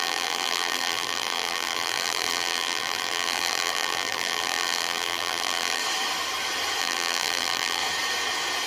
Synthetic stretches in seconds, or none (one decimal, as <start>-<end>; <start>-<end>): 0.0-5.8; 6.8-7.8